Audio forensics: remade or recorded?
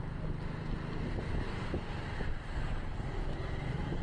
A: recorded